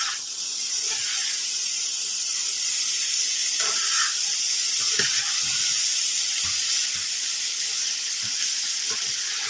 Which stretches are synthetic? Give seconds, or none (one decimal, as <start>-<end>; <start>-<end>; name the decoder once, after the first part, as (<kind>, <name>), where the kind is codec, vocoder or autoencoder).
none